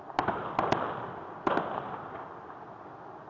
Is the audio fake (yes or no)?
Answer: no